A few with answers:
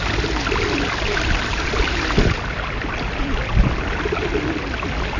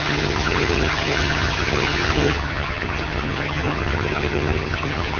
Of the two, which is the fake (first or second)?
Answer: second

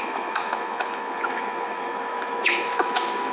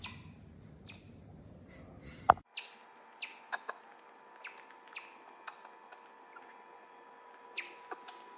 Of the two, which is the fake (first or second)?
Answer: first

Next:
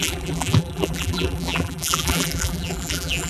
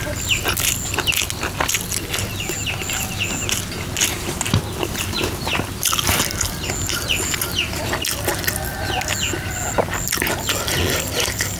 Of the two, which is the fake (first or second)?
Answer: first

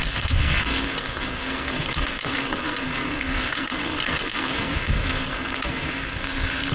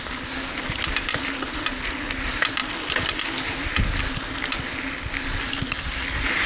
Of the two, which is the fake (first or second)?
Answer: first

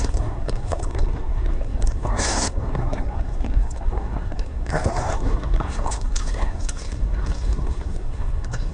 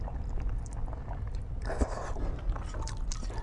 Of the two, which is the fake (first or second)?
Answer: first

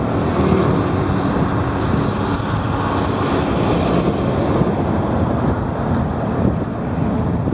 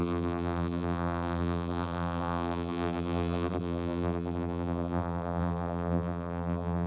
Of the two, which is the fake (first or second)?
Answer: second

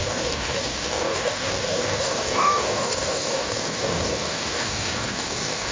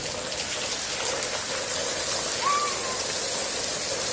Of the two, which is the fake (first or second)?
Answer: first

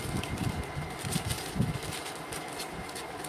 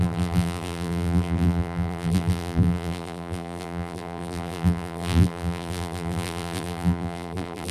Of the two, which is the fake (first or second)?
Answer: second